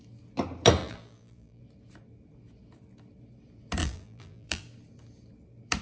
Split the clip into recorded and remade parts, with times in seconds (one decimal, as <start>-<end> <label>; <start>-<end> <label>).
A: 0.0-0.8 recorded; 0.8-1.6 remade; 1.6-3.8 recorded; 3.8-4.6 remade; 4.6-5.8 recorded